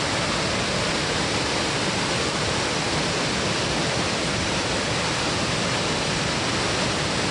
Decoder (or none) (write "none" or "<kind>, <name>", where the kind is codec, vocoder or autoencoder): none